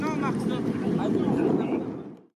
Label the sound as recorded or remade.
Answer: recorded